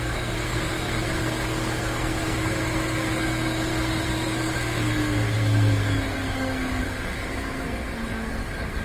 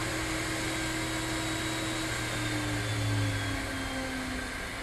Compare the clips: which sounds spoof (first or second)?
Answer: first